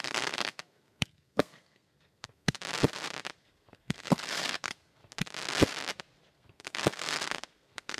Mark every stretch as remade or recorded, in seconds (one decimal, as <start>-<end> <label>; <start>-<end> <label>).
0.0-2.6 remade; 2.6-3.4 recorded; 3.4-5.0 remade; 5.0-6.3 recorded; 6.3-8.0 remade